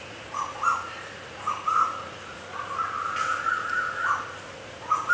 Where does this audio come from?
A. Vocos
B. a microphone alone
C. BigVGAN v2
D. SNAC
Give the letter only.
A